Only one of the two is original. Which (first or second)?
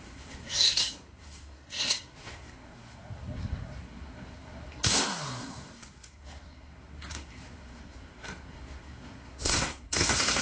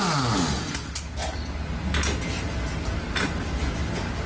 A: second